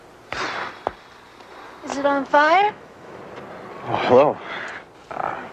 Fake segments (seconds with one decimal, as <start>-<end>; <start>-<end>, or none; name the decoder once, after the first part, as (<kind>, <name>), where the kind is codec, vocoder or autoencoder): 1.9-3.2 (autoencoder, DAC-VAE)